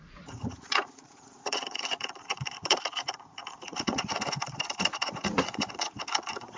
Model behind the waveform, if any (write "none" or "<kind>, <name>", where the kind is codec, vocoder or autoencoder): vocoder, Vocos